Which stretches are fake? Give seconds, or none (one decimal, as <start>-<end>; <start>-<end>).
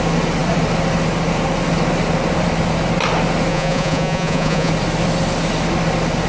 3.5-4.7